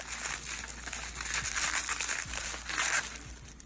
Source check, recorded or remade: recorded